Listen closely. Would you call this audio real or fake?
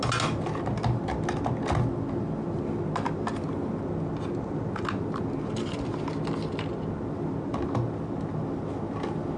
real